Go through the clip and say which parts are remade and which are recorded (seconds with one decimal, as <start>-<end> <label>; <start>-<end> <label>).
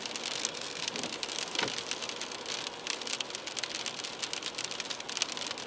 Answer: 0.0-0.4 recorded; 0.4-0.9 remade; 0.9-5.7 recorded